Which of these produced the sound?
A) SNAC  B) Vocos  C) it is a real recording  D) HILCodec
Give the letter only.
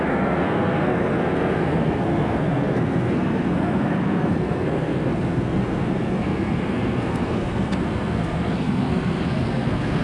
A